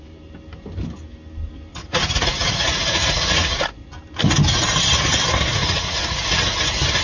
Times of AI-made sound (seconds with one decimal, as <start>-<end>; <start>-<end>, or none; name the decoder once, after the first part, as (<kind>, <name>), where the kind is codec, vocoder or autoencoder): 1.7-3.9 (vocoder, Vocos); 5.5-6.3